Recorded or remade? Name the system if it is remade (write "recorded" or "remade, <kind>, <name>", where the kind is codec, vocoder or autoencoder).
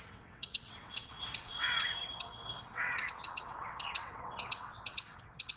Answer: remade, vocoder, WaveNeXt